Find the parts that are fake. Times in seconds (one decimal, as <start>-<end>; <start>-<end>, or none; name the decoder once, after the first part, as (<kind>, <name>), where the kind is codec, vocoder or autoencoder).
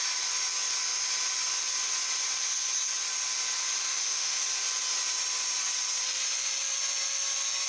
3.9-4.4 (autoencoder, DAC-VAE)